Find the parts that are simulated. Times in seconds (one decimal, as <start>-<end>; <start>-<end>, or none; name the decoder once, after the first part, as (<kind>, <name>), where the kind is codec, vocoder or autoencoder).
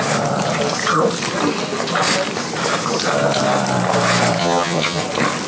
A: 4.4-5.0 (vocoder, HiFi-GAN)